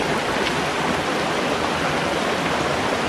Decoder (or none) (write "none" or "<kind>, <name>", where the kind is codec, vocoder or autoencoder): none